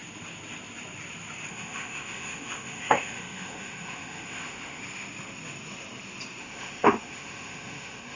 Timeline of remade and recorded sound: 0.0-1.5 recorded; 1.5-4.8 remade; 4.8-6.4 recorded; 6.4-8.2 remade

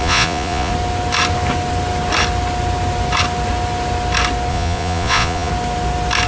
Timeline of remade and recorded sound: 0.0-0.7 remade; 0.7-4.5 recorded; 4.5-5.5 remade; 5.5-6.3 recorded

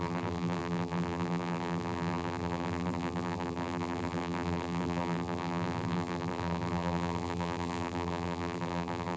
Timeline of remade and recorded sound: 0.0-9.2 remade

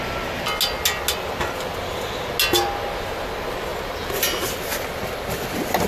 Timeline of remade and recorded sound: 0.0-5.9 recorded